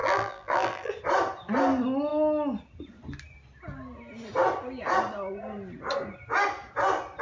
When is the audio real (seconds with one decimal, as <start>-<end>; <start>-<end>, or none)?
0.9-7.2